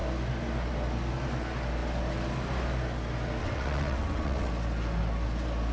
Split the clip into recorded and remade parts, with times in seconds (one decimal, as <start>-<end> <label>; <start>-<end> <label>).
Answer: 0.0-3.4 recorded; 3.4-4.5 remade; 4.5-5.7 recorded